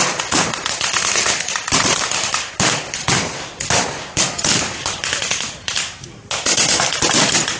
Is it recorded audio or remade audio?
recorded